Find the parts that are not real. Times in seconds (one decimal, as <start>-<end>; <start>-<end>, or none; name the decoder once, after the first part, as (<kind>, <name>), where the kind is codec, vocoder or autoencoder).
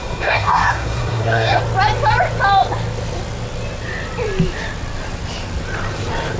0.0-1.6 (codec, SNAC)